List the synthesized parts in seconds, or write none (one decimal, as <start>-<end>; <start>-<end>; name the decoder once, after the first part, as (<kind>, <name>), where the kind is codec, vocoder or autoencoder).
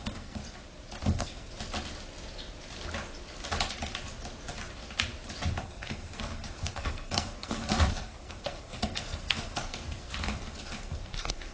0.0-0.4 (codec, SNAC); 1.0-1.5; 5.6-11.5